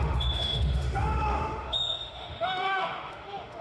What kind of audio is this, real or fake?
fake